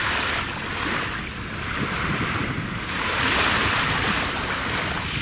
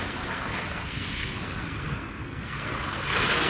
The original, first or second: first